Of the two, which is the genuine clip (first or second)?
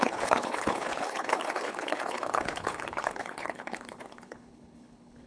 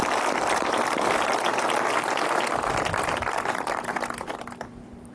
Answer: second